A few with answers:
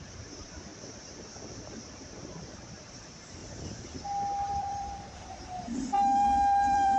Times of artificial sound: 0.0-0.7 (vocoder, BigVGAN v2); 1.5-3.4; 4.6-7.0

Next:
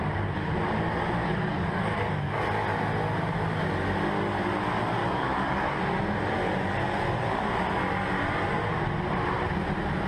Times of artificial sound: 1.2-2.4 (codec, DAC); 5.0-5.8

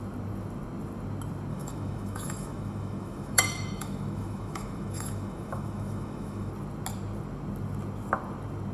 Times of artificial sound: 1.5-6.5 (autoencoder, DAC-VAE)

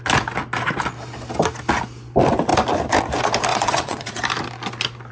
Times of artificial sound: 3.5-4.2 (vocoder, Vocos)

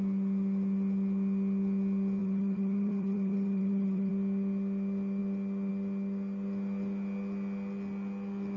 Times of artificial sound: 2.2-4.1 (vocoder, HiFi-GAN)

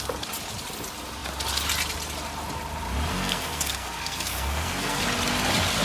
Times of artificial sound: 3.1-5.0 (codec, SNAC)

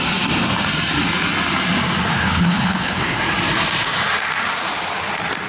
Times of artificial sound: 2.1-3.2 (codec, HILCodec)

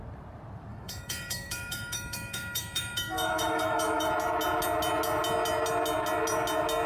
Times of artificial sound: 0.7-4.1 (autoencoder, DAC-VAE)